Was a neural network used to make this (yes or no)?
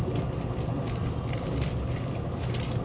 no